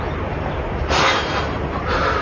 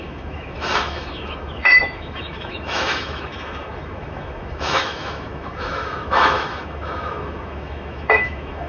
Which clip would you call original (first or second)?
first